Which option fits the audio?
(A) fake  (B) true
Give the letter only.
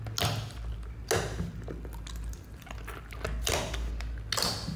B